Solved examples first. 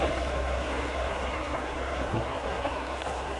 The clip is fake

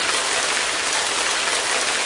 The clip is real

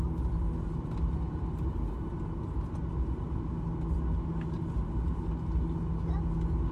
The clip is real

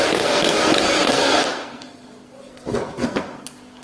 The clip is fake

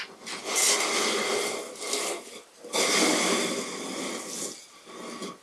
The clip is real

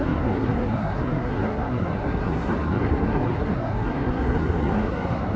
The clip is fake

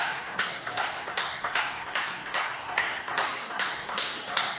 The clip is fake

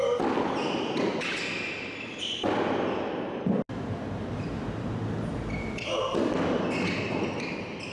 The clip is real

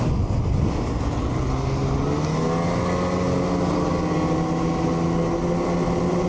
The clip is real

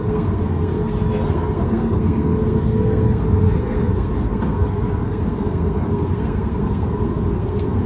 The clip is fake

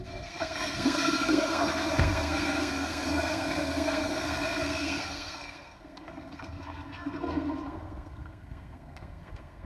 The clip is fake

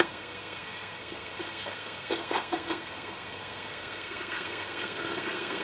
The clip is fake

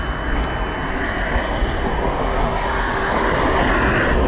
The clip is real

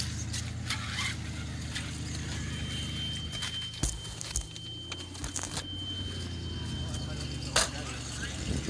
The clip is real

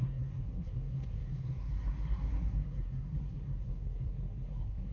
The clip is fake